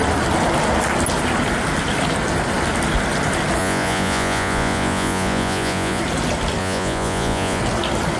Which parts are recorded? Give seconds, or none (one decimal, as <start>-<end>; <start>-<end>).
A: 0.0-3.6; 6.0-6.6; 7.6-8.2